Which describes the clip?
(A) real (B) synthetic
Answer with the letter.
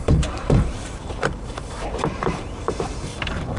B